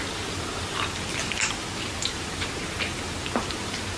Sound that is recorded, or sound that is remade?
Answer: remade